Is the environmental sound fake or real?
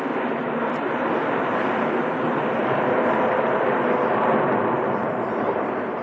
fake